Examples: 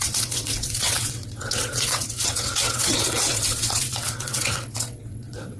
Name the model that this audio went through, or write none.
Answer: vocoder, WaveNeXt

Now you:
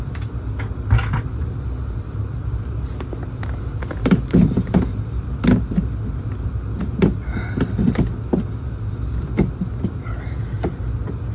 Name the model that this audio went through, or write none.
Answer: none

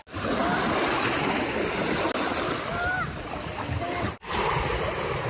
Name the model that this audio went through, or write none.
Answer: none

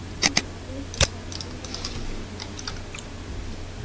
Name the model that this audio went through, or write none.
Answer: none